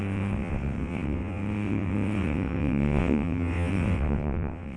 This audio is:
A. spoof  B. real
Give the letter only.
A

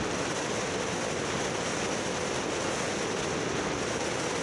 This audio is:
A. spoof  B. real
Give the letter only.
B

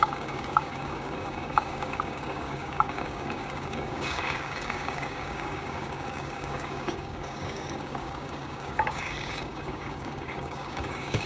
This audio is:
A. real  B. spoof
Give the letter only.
B